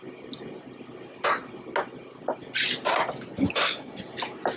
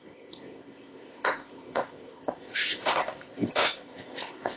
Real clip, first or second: first